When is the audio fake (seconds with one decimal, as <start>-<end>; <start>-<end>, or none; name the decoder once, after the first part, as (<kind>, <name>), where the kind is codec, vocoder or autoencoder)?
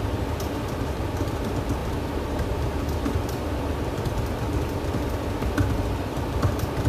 none